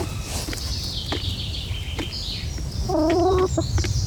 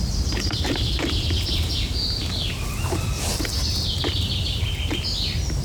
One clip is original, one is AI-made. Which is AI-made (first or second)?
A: first